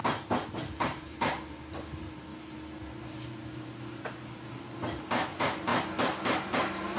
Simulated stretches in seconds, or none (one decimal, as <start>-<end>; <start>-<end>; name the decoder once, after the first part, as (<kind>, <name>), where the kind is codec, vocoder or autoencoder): 0.5-2.3 (vocoder, BigVGAN v2); 5.0-5.7